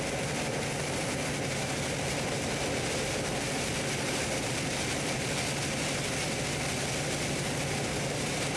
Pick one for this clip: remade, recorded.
recorded